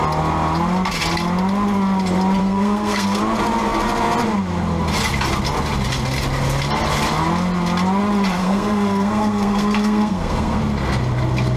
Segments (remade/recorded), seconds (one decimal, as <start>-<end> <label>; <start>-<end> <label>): 0.0-2.4 recorded; 2.4-3.2 remade; 3.2-8.4 recorded; 8.4-10.6 remade; 10.6-11.6 recorded

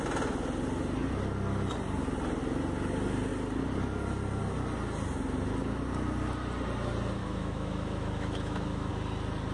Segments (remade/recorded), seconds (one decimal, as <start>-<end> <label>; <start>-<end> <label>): 0.0-7.2 recorded; 7.2-8.9 remade; 8.9-9.5 recorded

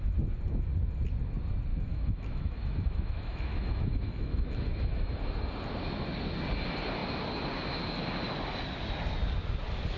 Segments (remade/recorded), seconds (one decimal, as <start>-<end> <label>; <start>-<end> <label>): 0.0-1.7 recorded; 1.7-5.1 remade; 5.1-10.0 recorded

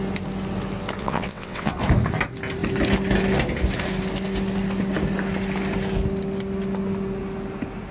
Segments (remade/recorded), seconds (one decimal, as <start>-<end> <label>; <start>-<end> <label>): 0.0-1.0 recorded; 1.0-1.7 remade; 1.7-7.9 recorded

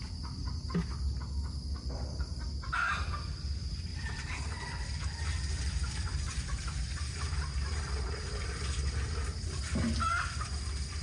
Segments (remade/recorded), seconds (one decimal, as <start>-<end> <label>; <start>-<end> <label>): 0.0-3.9 recorded; 3.9-8.3 remade; 8.3-11.0 recorded

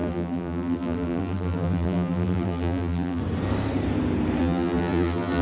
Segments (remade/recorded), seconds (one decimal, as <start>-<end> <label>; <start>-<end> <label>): 0.0-3.2 remade; 3.2-4.4 recorded; 4.4-5.4 remade

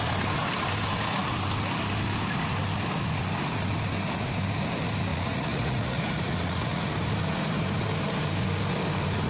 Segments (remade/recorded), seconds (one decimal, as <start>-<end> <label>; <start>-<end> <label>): 0.0-5.1 recorded; 5.1-6.8 remade; 6.8-9.3 recorded